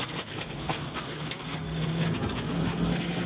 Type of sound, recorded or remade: remade